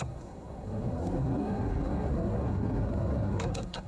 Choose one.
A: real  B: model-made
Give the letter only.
B